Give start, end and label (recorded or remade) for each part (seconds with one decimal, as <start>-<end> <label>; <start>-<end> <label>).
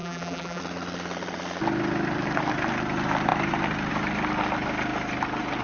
0.0-0.6 remade; 0.6-5.6 recorded